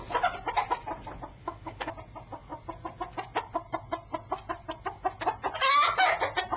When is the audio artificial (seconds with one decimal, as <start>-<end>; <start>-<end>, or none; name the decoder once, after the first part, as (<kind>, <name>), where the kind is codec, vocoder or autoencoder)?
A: 1.4-1.9 (autoencoder, DAC-VAE)